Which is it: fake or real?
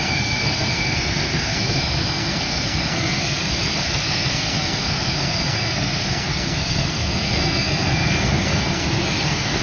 fake